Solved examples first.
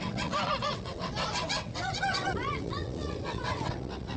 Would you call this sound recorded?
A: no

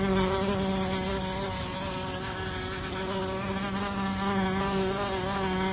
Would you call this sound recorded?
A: yes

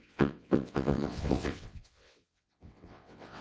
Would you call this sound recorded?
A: no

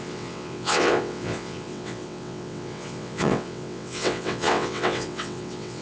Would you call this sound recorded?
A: no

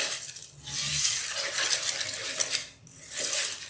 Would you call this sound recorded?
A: yes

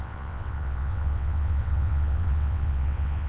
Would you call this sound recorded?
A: no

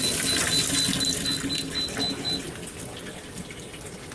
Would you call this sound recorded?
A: yes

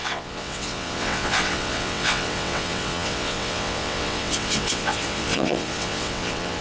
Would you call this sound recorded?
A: no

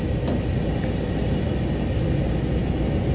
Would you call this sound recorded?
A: yes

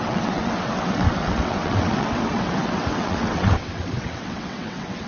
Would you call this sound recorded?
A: no